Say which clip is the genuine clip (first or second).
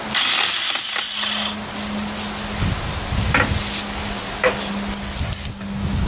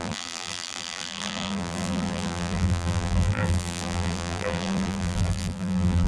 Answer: first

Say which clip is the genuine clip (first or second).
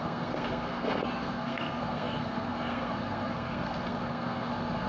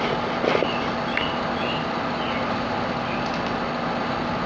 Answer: second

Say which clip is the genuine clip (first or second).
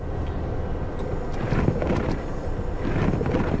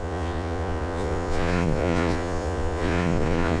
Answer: first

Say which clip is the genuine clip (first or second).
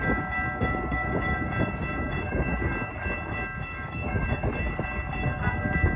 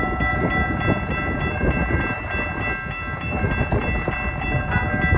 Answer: second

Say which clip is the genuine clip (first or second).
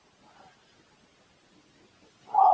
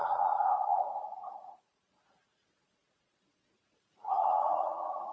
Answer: first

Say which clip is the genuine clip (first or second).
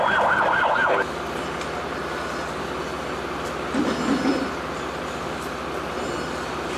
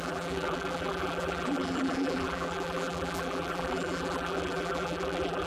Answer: first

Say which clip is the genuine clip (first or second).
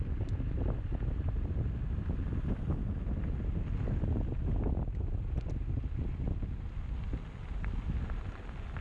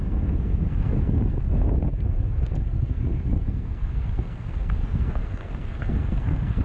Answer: first